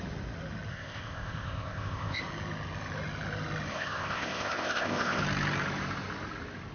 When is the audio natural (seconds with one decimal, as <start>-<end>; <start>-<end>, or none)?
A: 0.0-0.7; 2.2-3.7; 5.2-6.7